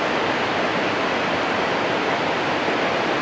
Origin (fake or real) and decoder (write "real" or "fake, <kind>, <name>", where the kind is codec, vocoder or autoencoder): real